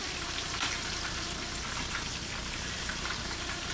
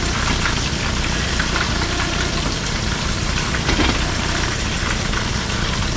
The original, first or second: first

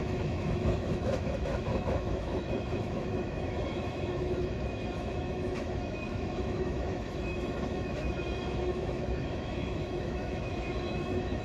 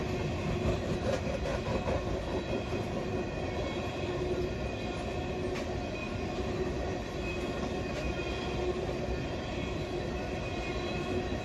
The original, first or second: second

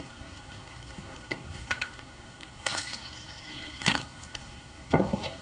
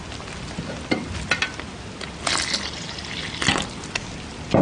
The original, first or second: second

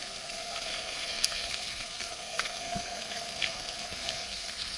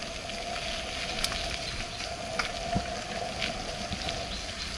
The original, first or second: second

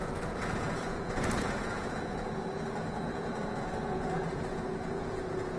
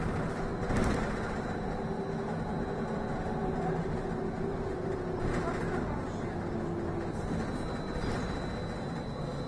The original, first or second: second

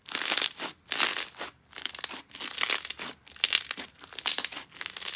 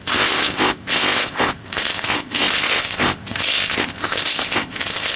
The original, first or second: first